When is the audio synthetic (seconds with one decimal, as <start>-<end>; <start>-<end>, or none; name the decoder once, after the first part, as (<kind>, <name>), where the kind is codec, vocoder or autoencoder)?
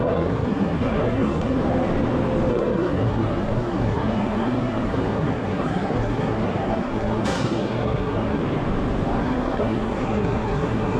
0.0-1.6 (codec, SNAC); 2.5-8.4; 9.2-11.0